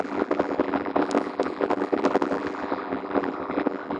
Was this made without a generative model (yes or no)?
no